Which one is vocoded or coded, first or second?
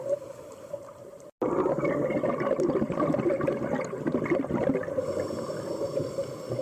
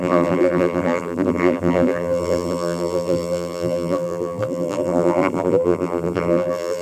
second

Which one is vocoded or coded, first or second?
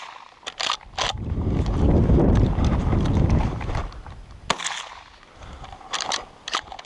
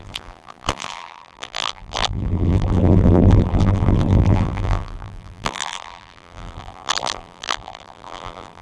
second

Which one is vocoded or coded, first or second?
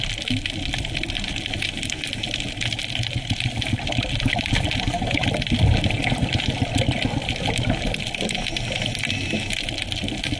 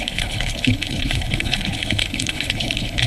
second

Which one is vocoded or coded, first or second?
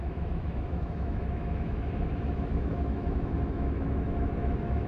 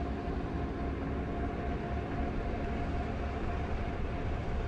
first